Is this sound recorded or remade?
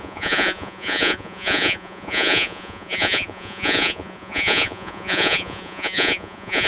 remade